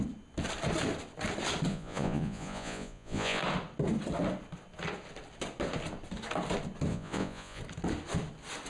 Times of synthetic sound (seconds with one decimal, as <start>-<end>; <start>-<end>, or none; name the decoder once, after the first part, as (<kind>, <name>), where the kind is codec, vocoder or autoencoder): 1.7-3.4 (vocoder, Vocos); 6.9-7.6